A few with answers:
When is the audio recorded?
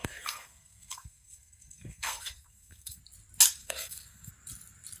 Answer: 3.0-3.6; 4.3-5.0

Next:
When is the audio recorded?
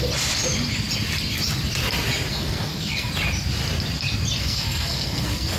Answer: 0.0-2.3; 3.1-4.4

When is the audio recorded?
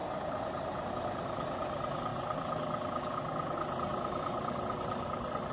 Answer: 0.0-5.5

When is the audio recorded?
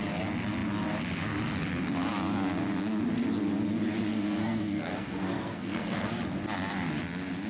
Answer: 0.0-4.1; 6.1-7.5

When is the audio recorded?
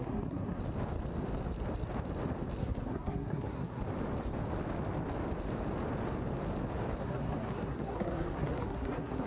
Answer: 0.6-2.6; 3.8-7.0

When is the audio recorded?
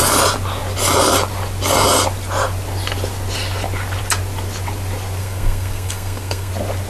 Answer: 0.0-5.2; 6.5-6.9